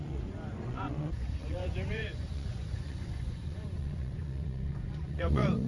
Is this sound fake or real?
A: fake